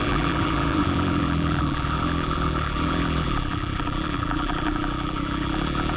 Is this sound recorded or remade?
remade